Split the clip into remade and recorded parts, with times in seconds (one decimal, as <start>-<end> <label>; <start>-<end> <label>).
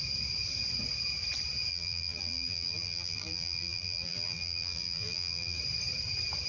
0.0-1.7 recorded; 1.7-5.6 remade; 5.6-6.5 recorded